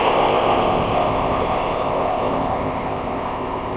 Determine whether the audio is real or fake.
fake